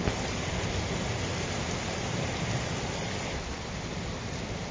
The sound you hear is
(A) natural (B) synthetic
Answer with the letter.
A